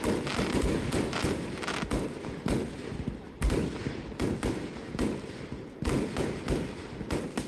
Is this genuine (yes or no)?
yes